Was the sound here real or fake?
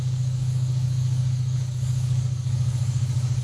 fake